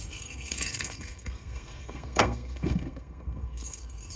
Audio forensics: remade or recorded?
remade